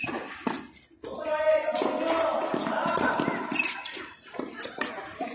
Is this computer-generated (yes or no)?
no